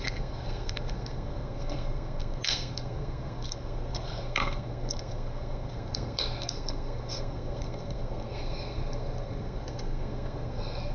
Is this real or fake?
fake